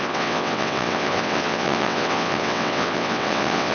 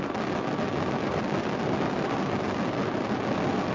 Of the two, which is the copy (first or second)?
first